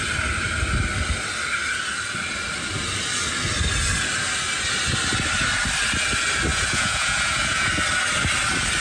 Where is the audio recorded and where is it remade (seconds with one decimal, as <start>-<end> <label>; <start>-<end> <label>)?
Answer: 0.0-6.5 recorded; 6.5-7.7 remade; 7.7-8.8 recorded